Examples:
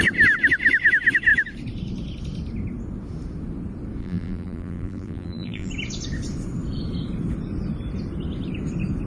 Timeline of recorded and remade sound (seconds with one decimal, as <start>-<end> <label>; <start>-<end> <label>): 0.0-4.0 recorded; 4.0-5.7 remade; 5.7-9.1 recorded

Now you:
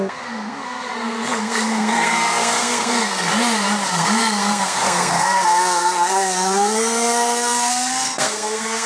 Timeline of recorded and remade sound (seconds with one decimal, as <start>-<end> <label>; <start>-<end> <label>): 0.0-3.3 remade; 3.3-3.9 recorded; 3.9-8.9 remade

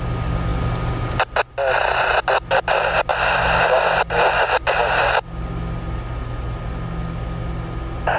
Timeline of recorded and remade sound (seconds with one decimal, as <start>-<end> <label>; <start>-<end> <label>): 0.0-8.2 recorded

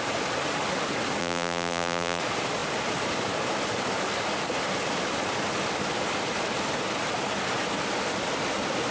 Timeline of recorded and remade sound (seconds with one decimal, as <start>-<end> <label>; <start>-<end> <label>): 0.0-1.2 recorded; 1.2-2.2 remade; 2.2-8.9 recorded

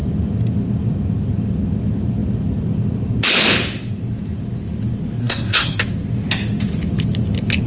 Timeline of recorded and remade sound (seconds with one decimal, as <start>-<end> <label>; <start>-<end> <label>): 0.0-5.2 recorded; 5.2-5.8 remade; 5.8-7.7 recorded

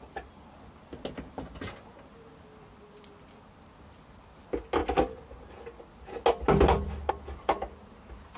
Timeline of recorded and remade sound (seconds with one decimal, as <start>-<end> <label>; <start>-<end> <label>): 0.0-8.4 recorded

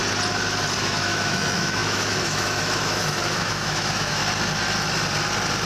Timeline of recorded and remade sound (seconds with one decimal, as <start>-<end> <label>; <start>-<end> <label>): 0.0-0.8 recorded; 0.8-4.2 remade; 4.2-5.7 recorded

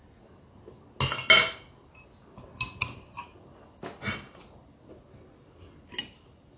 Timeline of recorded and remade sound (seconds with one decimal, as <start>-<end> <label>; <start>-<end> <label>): 0.0-6.6 recorded